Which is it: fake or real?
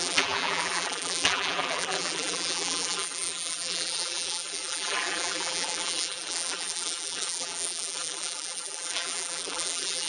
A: fake